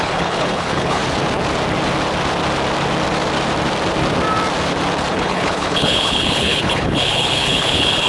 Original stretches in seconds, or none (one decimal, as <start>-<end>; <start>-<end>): 1.0-5.1